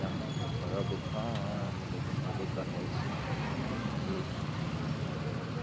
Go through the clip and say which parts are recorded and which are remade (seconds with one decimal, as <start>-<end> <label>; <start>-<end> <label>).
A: 0.0-1.5 recorded; 1.5-2.7 remade; 2.7-3.8 recorded; 3.8-4.4 remade; 4.4-5.6 recorded